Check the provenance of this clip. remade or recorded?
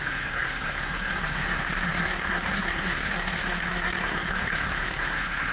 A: remade